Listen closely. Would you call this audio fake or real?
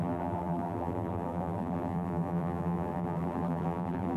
fake